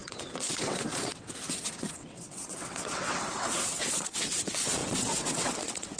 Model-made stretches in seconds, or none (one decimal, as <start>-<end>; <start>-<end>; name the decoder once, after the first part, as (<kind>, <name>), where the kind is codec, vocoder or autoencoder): 0.0-6.0 (vocoder, WaveNeXt)